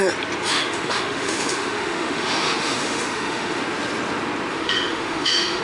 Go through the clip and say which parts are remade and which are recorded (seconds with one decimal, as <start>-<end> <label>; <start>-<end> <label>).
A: 0.0-0.5 recorded; 0.5-3.6 remade; 3.6-4.5 recorded; 4.5-5.6 remade